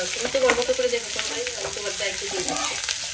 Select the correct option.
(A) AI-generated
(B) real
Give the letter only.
B